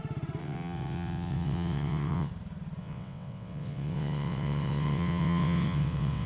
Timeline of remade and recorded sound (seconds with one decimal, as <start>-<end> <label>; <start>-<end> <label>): 0.0-0.4 recorded; 0.4-2.3 remade; 2.3-2.8 recorded; 2.8-6.3 remade